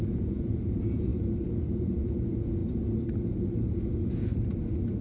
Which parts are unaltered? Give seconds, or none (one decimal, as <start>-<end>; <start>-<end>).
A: 1.1-2.0; 2.6-5.0